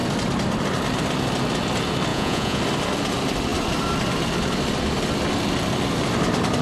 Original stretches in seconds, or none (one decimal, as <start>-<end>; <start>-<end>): 0.0-2.1; 2.6-6.6